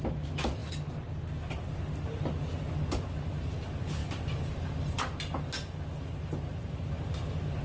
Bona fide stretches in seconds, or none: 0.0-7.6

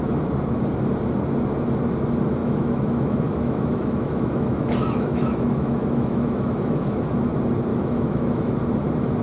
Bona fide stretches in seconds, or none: 0.0-2.4; 7.3-7.7; 8.5-9.2

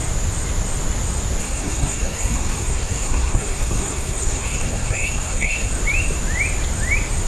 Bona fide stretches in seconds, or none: 0.0-1.4; 5.7-7.3

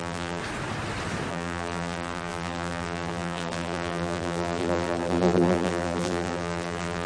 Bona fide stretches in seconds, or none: 0.4-1.3

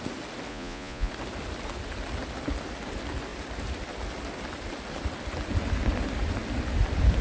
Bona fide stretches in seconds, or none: 0.0-0.5; 1.1-7.2

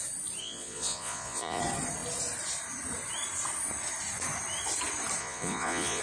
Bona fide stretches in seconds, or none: 0.0-0.4; 1.6-5.2

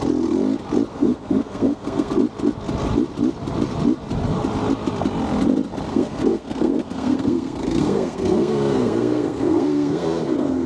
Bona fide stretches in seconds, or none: 0.0-0.9; 2.1-5.9

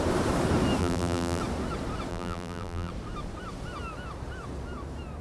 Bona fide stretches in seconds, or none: 0.0-0.8; 1.4-2.1; 2.9-5.2